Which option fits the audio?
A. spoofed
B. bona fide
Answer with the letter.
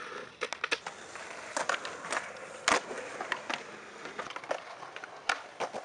B